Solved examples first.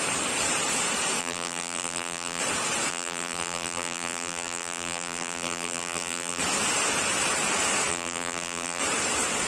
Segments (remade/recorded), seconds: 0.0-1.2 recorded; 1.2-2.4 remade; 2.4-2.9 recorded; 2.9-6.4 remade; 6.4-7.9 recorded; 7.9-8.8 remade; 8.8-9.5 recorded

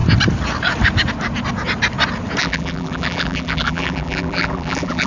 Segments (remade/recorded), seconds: 0.0-2.4 recorded; 2.4-5.1 remade